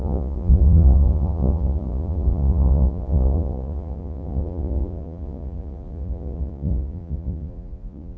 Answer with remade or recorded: remade